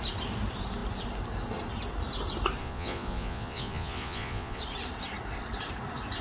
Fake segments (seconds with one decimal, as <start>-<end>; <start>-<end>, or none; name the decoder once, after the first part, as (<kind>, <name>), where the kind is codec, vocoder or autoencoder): 2.6-4.6 (vocoder, Vocos)